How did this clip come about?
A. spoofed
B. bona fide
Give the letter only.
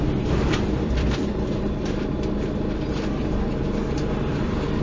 A